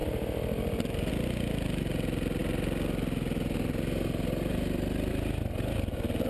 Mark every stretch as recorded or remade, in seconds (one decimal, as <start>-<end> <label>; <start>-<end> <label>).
0.0-6.3 recorded